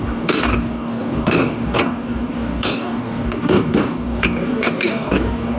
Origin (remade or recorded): remade